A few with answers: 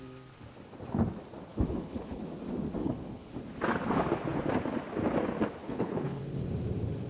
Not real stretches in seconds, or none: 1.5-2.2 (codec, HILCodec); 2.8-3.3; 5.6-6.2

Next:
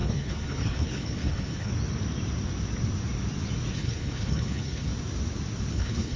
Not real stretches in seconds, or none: 0.0-1.7 (codec, HILCodec); 3.7-4.9; 5.7-6.2

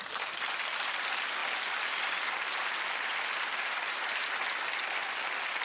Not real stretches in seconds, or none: none

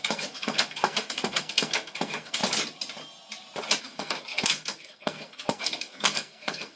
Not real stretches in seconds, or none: 0.0-2.4 (codec, SNAC); 3.8-6.8

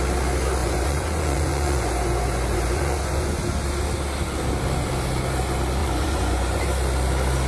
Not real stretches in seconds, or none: 0.6-3.4 (vocoder, Vocos); 5.8-6.6

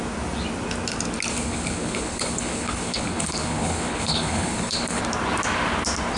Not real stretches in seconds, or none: 1.3-5.0 (codec, HILCodec)

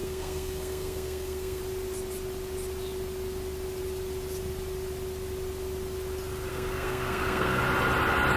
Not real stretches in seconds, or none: 0.0-1.6 (codec, SNAC); 6.5-7.6

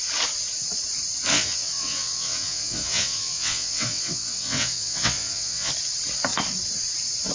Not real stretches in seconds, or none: 1.3-5.7 (vocoder, WaveNeXt)